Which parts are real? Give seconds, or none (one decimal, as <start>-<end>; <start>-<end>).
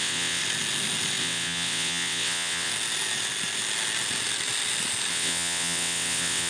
0.4-1.2; 2.7-5.1